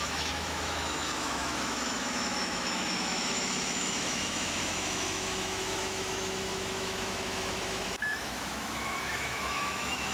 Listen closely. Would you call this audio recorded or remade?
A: remade